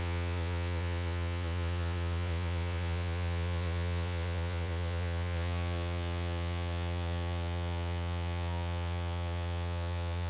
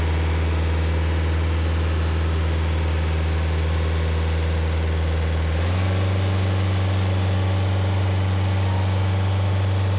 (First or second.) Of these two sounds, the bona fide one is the second